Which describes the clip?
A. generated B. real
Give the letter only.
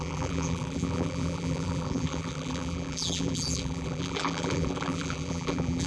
A